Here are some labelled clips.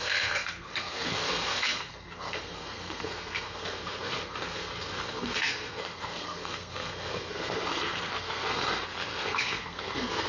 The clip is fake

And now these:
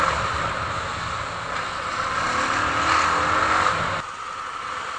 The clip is real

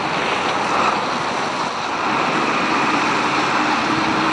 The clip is real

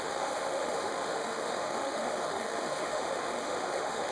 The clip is fake